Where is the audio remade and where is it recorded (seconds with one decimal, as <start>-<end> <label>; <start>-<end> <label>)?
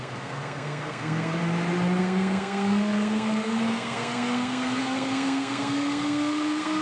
0.0-1.4 remade; 1.4-2.0 recorded; 2.0-6.8 remade